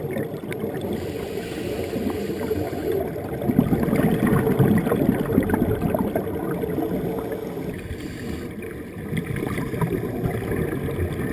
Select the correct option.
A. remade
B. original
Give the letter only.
B